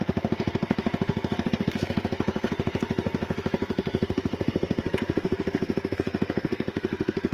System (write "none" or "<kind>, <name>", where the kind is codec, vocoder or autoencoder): codec, SNAC